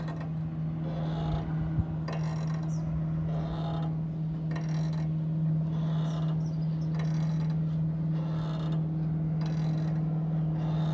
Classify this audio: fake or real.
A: real